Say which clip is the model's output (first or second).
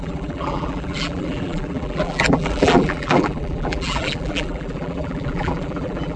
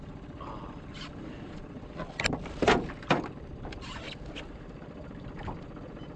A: first